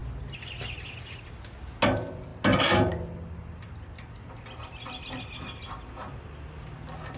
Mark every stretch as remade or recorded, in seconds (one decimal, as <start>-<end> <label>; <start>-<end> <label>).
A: 0.0-7.2 recorded